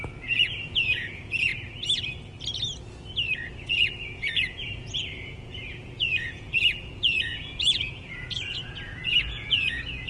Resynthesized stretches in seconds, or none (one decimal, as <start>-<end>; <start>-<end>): 0.0-1.5; 3.5-10.1